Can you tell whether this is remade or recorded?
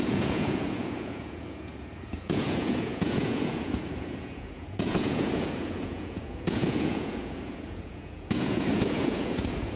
remade